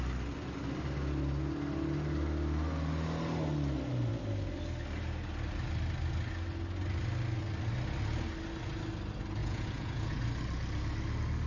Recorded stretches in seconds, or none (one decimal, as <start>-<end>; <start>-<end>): 0.0-9.4; 10.2-11.5